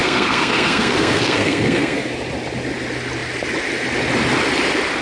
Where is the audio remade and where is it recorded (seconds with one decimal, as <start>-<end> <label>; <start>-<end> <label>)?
0.0-2.1 remade; 2.1-5.0 recorded